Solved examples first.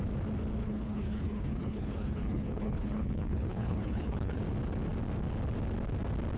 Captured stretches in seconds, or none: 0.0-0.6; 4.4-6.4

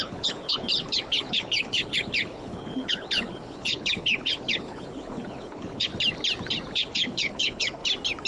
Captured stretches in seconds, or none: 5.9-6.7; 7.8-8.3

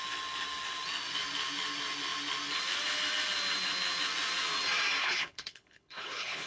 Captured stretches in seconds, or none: 0.0-5.0